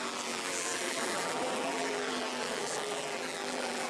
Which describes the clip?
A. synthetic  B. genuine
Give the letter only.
A